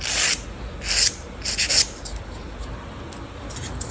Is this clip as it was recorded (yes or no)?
yes